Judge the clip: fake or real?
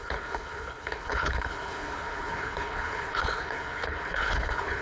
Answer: fake